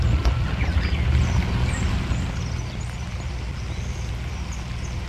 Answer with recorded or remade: recorded